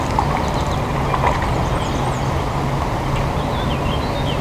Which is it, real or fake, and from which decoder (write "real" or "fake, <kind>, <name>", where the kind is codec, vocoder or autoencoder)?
real